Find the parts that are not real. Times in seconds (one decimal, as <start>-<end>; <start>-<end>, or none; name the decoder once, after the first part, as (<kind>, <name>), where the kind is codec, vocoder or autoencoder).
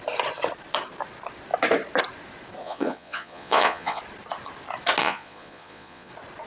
2.6-4.0 (vocoder, Vocos); 5.0-6.1